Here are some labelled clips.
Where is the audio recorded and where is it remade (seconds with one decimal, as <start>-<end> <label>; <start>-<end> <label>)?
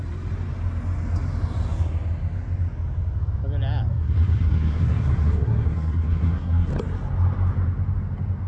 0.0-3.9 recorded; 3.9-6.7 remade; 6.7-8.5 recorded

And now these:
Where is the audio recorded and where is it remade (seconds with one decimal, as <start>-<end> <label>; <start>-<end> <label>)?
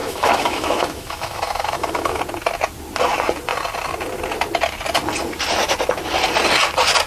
0.0-2.2 remade; 2.2-7.1 recorded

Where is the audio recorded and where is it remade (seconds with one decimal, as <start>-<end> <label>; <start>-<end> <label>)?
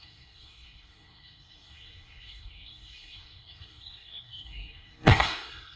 0.0-5.8 remade